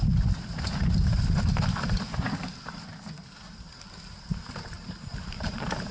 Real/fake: real